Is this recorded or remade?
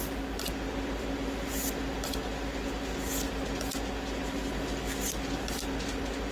recorded